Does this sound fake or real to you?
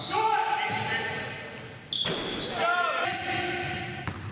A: real